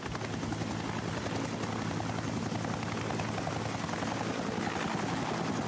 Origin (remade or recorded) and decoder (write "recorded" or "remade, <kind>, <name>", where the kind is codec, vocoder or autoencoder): recorded